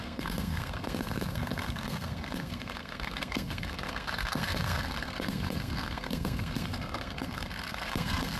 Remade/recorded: remade